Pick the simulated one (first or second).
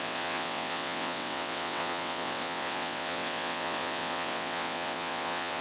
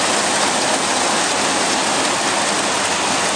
first